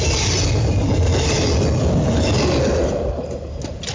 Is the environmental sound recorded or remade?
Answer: recorded